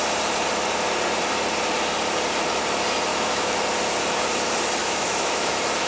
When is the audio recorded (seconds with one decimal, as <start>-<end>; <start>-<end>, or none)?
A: 0.0-3.1; 3.6-4.8; 5.5-5.9